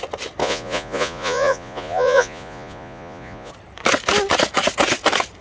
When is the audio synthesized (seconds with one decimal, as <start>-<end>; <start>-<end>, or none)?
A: 0.4-3.5